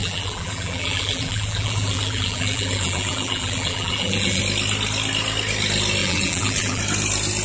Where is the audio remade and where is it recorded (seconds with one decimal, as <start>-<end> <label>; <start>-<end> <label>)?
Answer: 0.0-4.4 remade; 4.4-6.0 recorded; 6.0-6.8 remade; 6.8-7.4 recorded

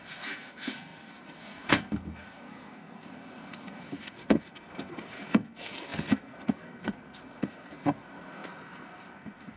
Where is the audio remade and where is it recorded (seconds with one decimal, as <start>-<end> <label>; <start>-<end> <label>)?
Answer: 0.0-9.6 remade

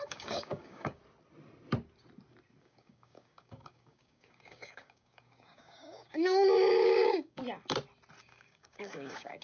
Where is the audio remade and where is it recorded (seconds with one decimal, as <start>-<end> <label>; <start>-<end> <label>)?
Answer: 0.0-1.0 remade; 1.0-2.6 recorded; 2.6-7.4 remade; 7.4-8.2 recorded; 8.2-9.4 remade

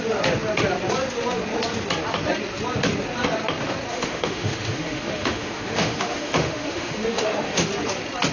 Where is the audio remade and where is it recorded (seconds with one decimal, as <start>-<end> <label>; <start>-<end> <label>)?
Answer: 0.0-3.9 recorded; 3.9-7.7 remade; 7.7-8.3 recorded

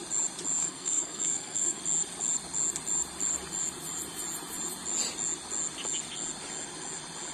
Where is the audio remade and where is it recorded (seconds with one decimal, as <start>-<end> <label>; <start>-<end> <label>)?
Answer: 0.0-0.6 recorded; 0.6-1.8 remade; 1.8-7.3 recorded

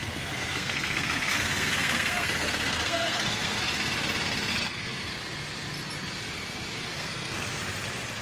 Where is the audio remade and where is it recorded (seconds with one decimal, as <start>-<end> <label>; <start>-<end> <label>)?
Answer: 0.0-3.6 remade; 3.6-4.5 recorded; 4.5-5.1 remade; 5.1-6.9 recorded; 6.9-7.6 remade; 7.6-8.2 recorded

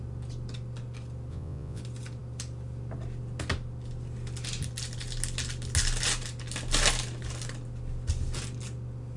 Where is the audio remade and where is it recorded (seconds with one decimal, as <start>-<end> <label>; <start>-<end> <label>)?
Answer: 0.0-1.3 recorded; 1.3-1.8 remade; 1.8-9.2 recorded